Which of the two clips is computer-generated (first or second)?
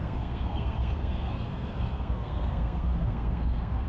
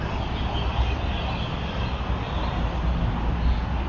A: first